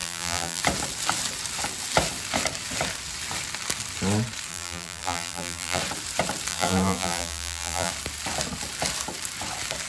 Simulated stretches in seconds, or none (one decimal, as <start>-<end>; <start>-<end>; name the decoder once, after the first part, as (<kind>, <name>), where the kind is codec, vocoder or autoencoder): 0.0-0.6 (vocoder, BigVGAN v2); 4.5-5.8; 6.5-7.9